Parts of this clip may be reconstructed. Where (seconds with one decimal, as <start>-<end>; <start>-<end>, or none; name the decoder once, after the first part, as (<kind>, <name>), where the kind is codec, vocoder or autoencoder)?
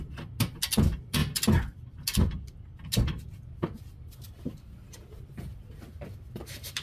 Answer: none